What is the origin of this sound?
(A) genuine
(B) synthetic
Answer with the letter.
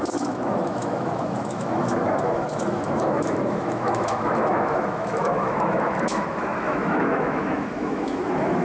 B